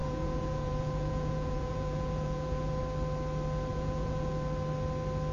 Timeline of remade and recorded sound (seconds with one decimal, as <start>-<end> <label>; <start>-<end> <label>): 0.0-2.8 remade; 2.8-3.7 recorded; 3.7-4.3 remade; 4.3-5.3 recorded